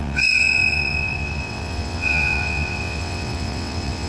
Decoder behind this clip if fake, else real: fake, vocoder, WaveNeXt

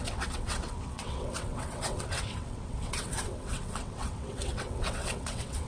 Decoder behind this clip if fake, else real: fake, vocoder, WaveNeXt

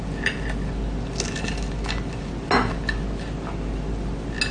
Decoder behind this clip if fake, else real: real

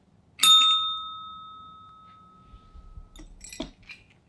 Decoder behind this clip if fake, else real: real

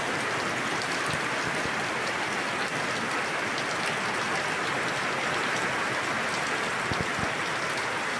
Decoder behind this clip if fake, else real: real